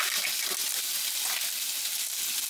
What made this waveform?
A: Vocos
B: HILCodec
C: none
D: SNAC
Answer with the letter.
C